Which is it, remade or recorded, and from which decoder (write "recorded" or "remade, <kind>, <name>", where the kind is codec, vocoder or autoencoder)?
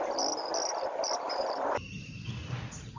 recorded